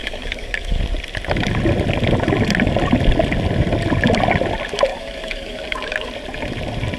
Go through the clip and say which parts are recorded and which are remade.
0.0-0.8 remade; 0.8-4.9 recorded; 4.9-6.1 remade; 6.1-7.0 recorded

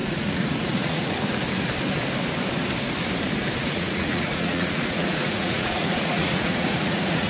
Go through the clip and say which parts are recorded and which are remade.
0.0-1.1 remade; 1.1-3.6 recorded; 3.6-7.3 remade

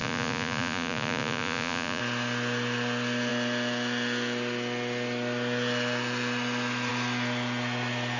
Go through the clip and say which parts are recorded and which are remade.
0.0-2.0 remade; 2.0-8.2 recorded

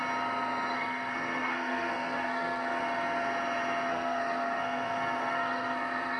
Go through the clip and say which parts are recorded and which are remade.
0.0-0.7 recorded; 0.7-2.8 remade; 2.8-3.9 recorded; 3.9-6.2 remade

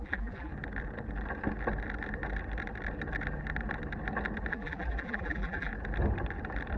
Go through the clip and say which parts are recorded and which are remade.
0.0-0.5 remade; 0.5-4.5 recorded; 4.5-5.7 remade; 5.7-6.8 recorded